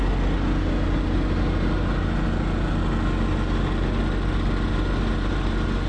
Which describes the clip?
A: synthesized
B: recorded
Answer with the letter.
B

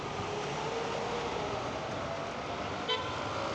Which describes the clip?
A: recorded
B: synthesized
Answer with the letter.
A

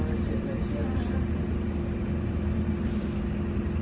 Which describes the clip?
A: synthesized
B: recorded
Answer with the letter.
B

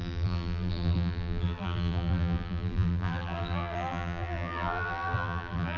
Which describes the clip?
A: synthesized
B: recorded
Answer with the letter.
A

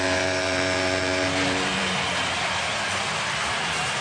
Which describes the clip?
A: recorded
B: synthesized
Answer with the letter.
B